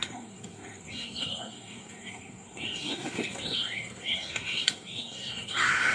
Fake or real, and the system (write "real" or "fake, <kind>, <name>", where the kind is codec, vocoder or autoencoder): fake, codec, SNAC